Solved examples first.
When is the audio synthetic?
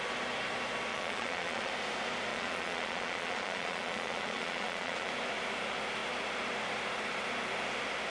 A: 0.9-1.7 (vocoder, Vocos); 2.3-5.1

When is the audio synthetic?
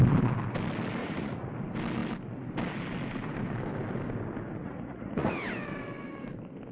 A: 1.0-1.5 (vocoder, Vocos); 4.6-5.3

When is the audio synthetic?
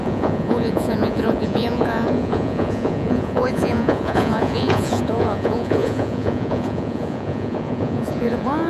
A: 0.0-8.7 (vocoder, Vocos)